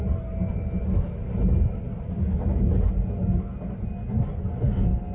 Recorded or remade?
recorded